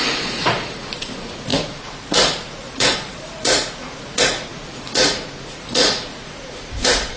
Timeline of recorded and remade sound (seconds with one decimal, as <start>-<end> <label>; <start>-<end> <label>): 0.0-7.2 remade